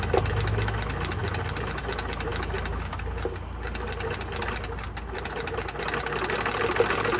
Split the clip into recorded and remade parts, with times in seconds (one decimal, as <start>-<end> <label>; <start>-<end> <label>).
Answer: 0.0-7.2 recorded